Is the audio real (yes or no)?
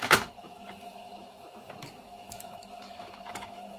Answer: no